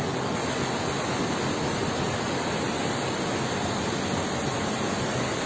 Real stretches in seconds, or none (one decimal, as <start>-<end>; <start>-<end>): 0.0-5.5